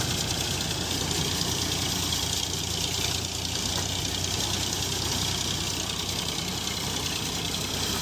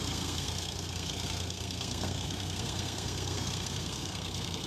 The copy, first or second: second